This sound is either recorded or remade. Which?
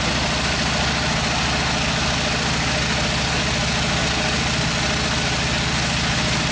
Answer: recorded